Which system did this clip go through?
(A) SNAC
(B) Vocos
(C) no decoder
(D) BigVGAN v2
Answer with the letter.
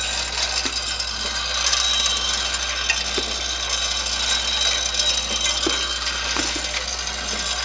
C